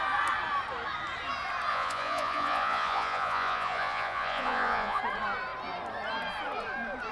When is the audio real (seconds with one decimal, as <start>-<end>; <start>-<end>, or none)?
0.0-1.7; 5.0-7.1